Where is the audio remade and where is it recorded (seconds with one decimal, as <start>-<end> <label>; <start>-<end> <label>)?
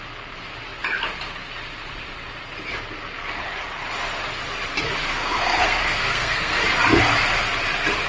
0.0-5.0 recorded; 5.0-6.6 remade; 6.6-8.1 recorded